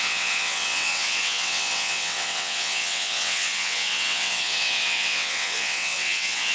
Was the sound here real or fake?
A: fake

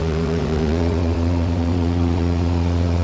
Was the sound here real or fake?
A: fake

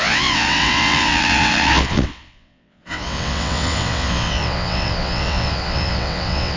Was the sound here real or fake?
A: fake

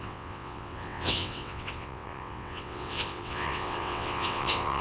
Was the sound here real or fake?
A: fake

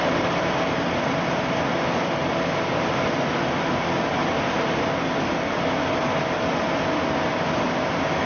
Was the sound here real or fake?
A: real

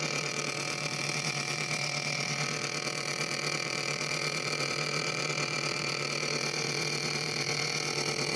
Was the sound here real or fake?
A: fake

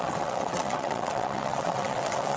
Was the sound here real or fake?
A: fake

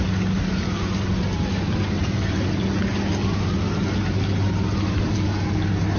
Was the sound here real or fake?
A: real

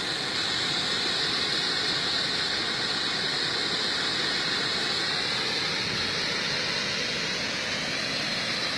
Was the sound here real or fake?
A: real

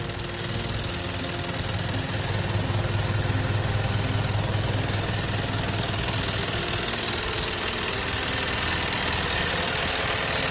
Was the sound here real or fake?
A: real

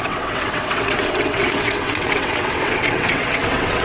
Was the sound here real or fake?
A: fake